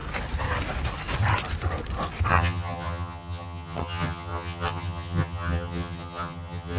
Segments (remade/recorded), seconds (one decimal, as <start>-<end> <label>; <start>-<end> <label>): 0.0-2.3 recorded; 2.3-6.8 remade